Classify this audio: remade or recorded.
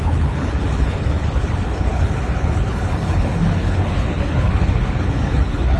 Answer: remade